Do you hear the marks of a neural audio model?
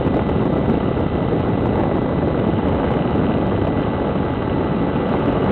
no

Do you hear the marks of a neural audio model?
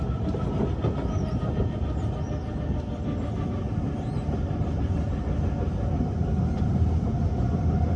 no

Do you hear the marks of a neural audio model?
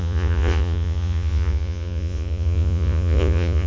yes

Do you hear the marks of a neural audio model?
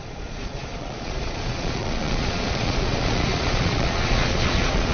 yes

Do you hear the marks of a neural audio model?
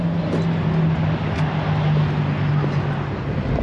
no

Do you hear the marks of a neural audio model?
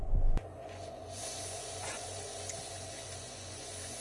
yes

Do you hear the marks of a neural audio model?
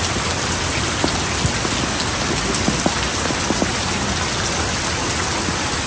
no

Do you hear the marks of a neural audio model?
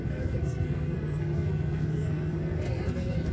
yes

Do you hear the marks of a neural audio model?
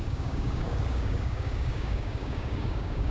yes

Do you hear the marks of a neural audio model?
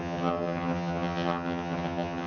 yes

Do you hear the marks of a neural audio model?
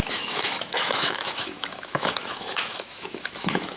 yes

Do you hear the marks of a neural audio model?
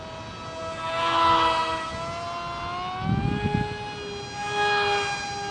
no